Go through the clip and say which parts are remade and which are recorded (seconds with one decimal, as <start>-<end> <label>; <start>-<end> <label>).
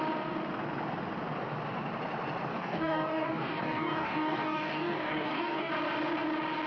0.0-2.5 recorded; 2.5-5.7 remade; 5.7-6.7 recorded